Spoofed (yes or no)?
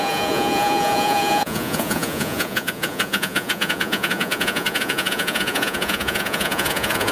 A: yes